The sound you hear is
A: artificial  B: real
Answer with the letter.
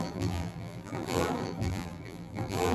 A